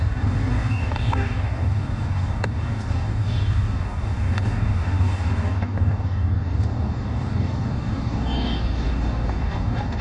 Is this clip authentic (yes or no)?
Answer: no